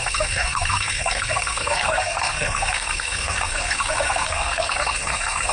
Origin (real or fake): fake